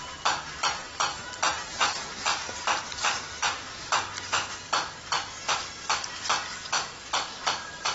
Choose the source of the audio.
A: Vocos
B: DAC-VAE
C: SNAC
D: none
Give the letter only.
D